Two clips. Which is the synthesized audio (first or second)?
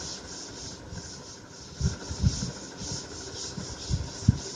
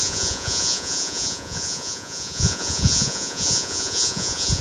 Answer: second